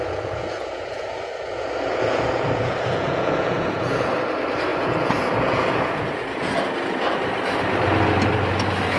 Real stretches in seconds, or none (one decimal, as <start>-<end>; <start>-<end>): 4.1-4.7; 6.5-9.0